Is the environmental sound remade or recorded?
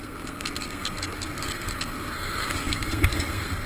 remade